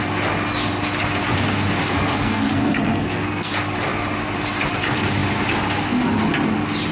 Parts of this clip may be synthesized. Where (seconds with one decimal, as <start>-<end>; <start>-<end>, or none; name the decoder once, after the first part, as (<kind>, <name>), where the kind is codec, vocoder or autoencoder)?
1.8-3.5 (codec, SNAC)